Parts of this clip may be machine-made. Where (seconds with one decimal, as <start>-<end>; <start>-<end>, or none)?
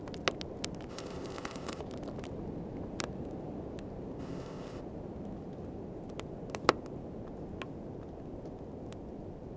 0.9-1.8; 4.2-4.8